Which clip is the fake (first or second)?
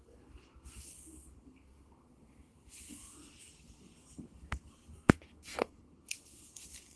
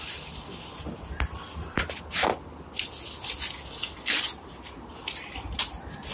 first